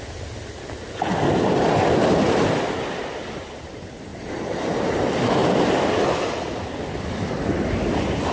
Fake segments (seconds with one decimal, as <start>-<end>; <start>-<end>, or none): 4.1-5.0; 5.4-6.0